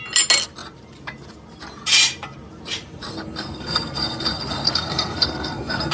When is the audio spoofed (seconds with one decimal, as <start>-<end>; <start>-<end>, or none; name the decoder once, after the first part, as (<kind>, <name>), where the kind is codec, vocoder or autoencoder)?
3.1-5.9 (codec, SNAC)